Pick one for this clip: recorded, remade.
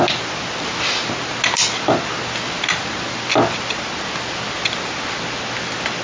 recorded